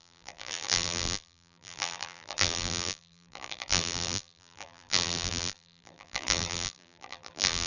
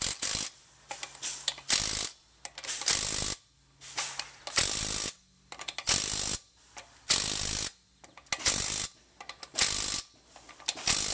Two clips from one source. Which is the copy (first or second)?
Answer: first